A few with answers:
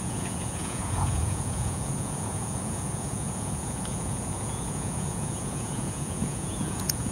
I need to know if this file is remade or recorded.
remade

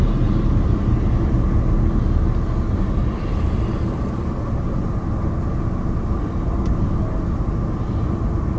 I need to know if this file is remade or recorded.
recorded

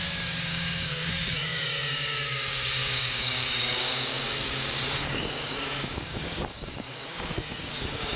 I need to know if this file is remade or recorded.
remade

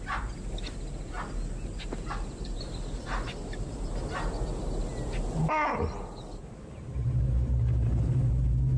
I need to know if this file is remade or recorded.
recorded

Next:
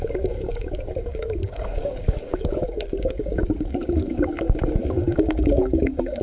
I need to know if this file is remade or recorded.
remade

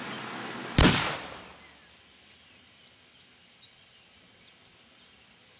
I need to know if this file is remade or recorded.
recorded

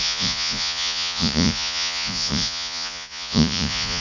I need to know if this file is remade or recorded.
remade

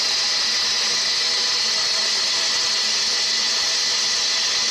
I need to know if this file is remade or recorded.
recorded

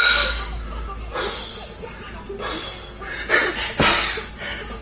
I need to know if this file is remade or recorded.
recorded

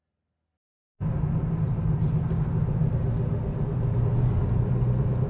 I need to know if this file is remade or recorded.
recorded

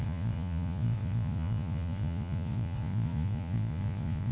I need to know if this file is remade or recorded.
remade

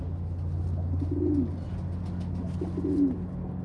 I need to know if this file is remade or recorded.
recorded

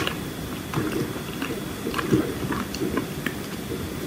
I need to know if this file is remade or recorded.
recorded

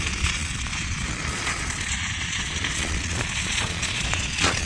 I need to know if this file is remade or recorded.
remade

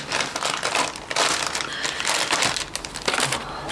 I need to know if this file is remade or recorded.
recorded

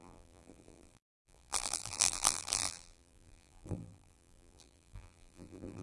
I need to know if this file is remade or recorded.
remade